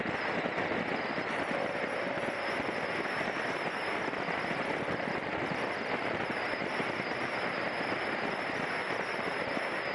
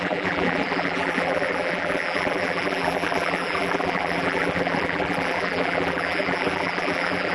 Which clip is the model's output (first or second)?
second